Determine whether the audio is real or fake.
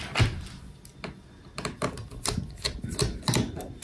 real